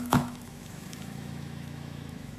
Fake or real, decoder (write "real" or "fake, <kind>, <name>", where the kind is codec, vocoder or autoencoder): fake, autoencoder, DAC-VAE